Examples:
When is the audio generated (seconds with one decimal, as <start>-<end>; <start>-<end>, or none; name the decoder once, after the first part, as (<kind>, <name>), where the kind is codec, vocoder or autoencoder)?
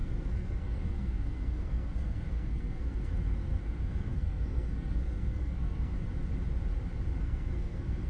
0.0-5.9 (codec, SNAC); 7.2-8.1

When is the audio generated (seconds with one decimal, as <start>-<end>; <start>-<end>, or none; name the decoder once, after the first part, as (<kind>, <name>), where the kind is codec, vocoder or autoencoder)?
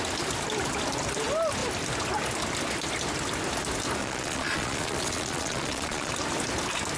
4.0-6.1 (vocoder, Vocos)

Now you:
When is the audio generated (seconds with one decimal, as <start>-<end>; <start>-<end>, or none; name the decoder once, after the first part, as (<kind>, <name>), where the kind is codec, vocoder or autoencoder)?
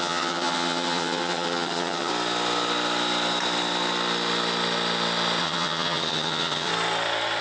0.0-2.1 (vocoder, HiFi-GAN); 5.4-6.7